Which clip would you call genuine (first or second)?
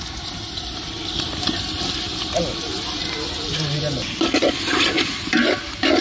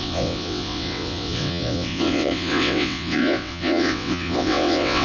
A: first